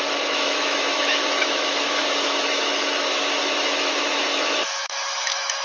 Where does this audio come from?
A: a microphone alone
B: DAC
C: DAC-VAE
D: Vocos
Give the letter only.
C